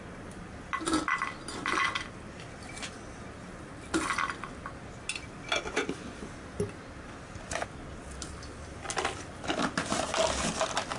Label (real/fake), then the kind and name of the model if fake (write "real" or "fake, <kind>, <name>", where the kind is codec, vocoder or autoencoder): real